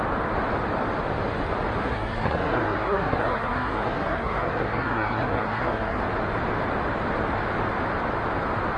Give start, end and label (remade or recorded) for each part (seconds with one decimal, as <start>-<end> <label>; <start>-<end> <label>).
0.0-1.8 recorded; 1.8-6.0 remade; 6.0-8.8 recorded

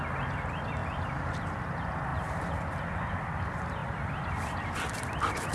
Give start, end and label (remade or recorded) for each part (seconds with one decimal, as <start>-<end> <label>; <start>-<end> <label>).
0.0-0.8 recorded; 0.8-1.6 remade; 1.6-2.1 recorded; 2.1-2.7 remade; 2.7-3.8 recorded; 3.8-5.5 remade

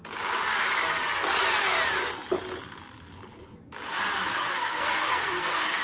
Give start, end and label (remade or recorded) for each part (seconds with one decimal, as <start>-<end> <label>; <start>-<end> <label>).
0.0-4.3 recorded; 4.3-5.8 remade

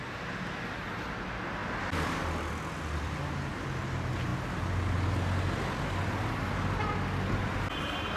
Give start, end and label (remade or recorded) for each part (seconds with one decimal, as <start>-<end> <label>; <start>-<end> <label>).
0.0-8.2 recorded